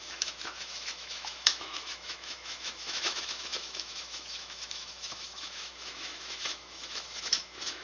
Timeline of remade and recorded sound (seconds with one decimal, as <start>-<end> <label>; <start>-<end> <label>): 0.0-7.8 remade